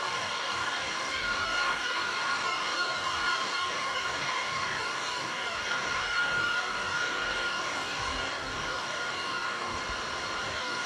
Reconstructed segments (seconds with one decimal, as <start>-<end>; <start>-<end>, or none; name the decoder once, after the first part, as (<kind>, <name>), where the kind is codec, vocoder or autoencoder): 0.0-9.8 (codec, DAC); 10.4-10.9